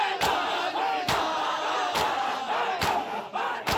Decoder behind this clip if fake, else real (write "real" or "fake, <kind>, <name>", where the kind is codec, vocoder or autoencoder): real